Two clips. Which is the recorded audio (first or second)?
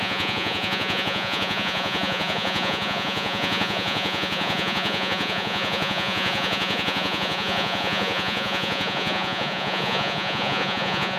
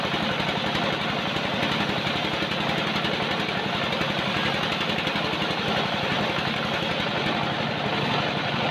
second